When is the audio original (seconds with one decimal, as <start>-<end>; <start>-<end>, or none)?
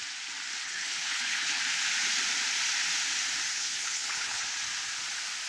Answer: 0.0-0.6; 1.6-3.5; 4.4-5.5